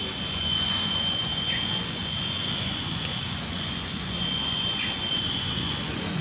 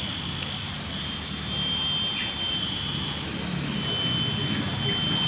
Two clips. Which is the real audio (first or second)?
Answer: second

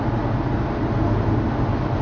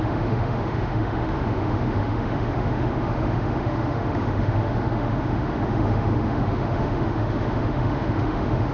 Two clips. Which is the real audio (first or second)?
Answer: first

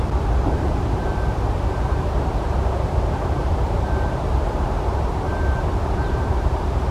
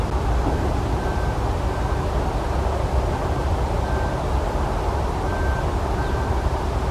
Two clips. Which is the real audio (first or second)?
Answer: second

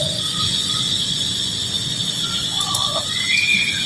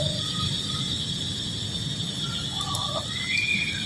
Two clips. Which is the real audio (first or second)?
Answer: second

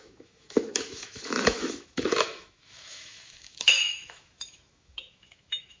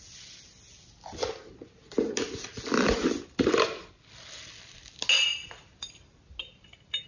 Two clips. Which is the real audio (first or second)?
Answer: second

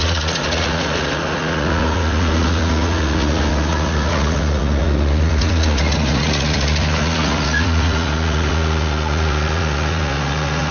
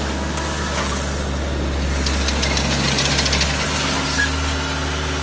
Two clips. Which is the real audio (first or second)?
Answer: second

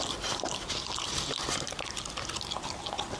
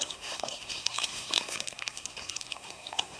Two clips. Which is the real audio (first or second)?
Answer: first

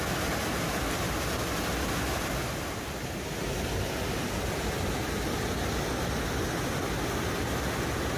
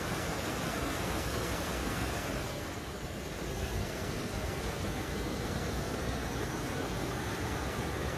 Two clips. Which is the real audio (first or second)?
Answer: first